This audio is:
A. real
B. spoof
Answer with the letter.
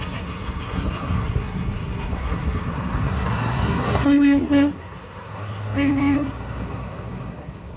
B